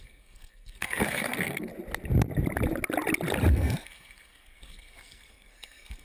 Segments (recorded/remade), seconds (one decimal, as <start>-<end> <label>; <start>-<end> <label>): 0.0-1.7 remade; 1.7-3.5 recorded; 3.5-6.0 remade